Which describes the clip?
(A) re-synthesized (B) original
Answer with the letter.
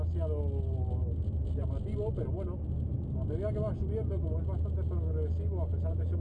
B